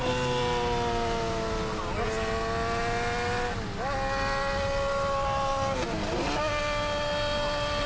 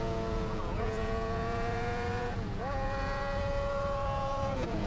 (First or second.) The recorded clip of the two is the first